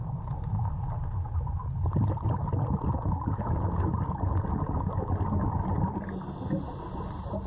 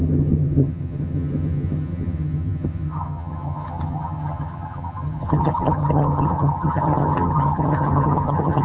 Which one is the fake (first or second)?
second